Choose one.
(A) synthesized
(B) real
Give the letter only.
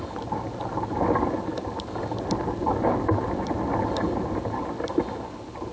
B